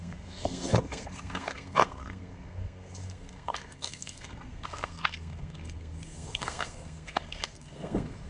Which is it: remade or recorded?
remade